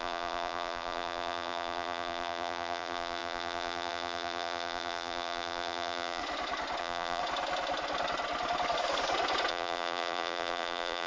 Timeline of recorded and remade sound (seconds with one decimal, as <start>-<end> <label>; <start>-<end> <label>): 0.0-6.2 remade; 6.2-6.8 recorded; 6.8-7.2 remade; 7.2-9.5 recorded; 9.5-11.1 remade